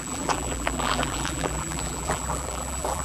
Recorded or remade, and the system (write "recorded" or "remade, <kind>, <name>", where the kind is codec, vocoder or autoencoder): remade, vocoder, BigVGAN v2